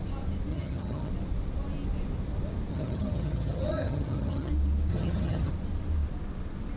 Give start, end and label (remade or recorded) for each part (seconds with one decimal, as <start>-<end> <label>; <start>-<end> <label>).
0.0-0.5 recorded; 0.5-1.1 remade; 1.1-2.7 recorded; 2.7-4.5 remade; 4.5-4.9 recorded; 4.9-5.5 remade; 5.5-6.8 recorded